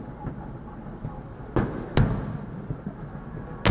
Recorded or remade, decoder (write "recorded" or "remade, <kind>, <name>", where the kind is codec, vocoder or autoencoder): recorded